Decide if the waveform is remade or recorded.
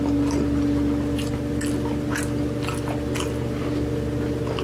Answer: recorded